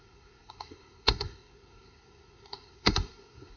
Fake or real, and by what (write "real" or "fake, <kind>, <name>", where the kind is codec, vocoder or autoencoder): fake, codec, SNAC